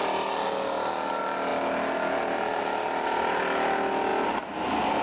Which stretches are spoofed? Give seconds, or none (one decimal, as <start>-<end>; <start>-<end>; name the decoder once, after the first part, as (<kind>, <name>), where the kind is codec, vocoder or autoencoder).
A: none

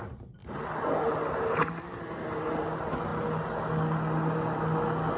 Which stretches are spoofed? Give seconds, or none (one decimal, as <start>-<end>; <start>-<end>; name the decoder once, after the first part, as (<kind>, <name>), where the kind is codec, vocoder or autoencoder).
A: none

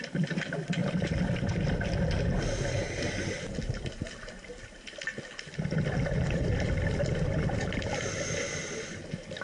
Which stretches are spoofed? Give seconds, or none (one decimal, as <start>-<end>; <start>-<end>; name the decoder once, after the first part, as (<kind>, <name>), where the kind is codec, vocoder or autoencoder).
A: none

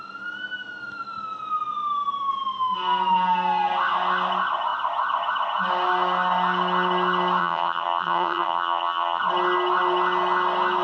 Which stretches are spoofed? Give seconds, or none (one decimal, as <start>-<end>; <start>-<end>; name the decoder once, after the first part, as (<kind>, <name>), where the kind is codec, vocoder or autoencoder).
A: 7.4-9.2 (vocoder, HiFi-GAN)

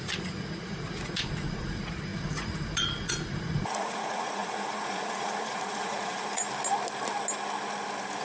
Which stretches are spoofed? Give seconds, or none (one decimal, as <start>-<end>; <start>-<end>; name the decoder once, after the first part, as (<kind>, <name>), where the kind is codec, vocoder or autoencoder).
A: 0.0-6.4 (vocoder, Vocos)

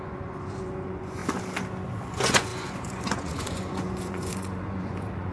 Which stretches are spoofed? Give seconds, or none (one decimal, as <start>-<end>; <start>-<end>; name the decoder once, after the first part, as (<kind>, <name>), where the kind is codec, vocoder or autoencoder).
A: 0.0-1.2 (vocoder, Vocos); 2.1-5.3

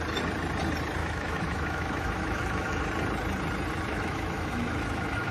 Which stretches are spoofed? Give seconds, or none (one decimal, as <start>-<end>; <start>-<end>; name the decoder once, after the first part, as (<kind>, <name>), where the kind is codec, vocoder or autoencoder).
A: 1.0-2.8 (autoencoder, DAC-VAE); 3.9-5.3

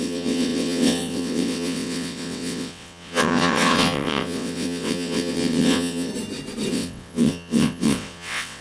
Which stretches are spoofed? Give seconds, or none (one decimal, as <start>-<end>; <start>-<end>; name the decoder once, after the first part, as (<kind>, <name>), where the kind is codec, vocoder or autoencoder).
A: 0.0-6.1 (vocoder, WaveNeXt); 6.7-8.6